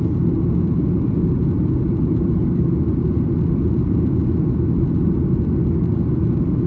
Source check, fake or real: real